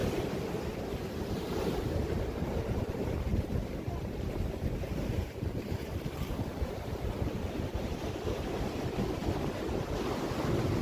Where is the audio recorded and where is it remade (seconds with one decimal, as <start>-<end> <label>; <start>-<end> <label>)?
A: 0.0-0.9 recorded; 0.9-9.2 remade; 9.2-10.8 recorded

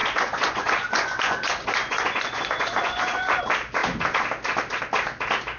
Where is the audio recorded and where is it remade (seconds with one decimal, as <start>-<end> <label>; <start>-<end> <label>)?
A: 0.0-3.4 remade; 3.4-5.6 recorded

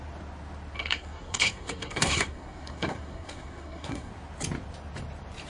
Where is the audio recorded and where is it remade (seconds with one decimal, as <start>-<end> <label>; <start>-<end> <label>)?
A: 0.0-0.8 recorded; 0.8-4.1 remade; 4.1-5.5 recorded